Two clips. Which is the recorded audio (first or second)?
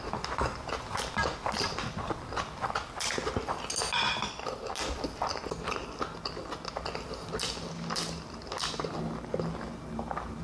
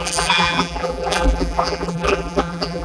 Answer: first